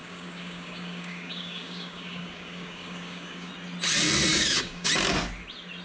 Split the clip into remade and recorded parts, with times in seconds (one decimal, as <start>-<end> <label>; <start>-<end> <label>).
0.0-3.5 remade; 3.5-4.3 recorded; 4.3-4.9 remade; 4.9-5.8 recorded